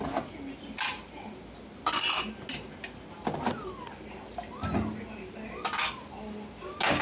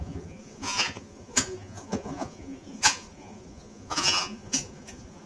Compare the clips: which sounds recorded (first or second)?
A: first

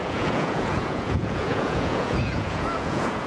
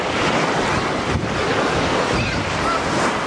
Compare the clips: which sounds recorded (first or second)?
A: second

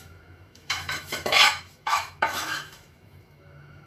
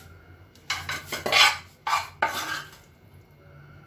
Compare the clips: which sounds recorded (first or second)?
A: second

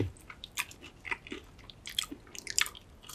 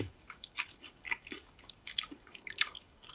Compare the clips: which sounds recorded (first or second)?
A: first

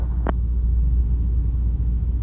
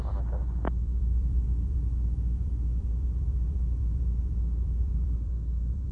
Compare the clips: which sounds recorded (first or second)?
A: first